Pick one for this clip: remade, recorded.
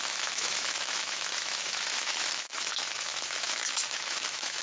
remade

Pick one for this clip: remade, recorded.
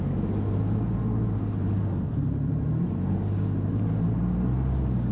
recorded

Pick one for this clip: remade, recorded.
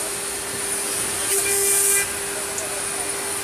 recorded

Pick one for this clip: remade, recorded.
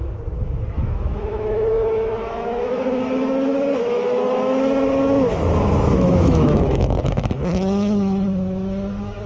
remade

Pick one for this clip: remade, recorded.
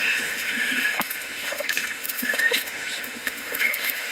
remade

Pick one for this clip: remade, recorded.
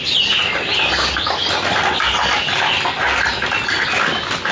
recorded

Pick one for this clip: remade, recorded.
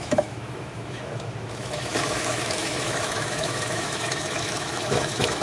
remade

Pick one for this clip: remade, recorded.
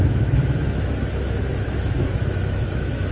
remade